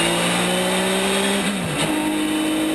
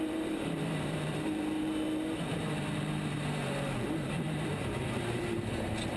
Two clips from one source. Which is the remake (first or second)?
second